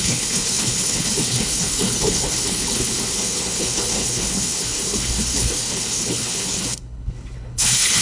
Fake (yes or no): yes